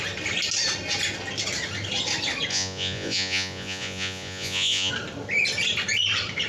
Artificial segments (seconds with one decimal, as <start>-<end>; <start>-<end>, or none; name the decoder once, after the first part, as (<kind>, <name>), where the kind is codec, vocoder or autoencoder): 2.5-4.9 (vocoder, Vocos)